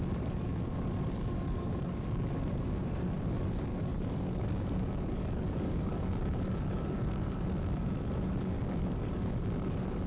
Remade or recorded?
remade